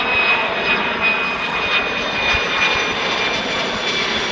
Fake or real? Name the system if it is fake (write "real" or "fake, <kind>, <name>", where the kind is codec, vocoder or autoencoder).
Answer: real